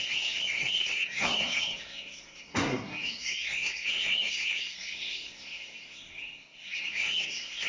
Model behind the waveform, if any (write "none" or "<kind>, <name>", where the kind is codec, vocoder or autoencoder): codec, SNAC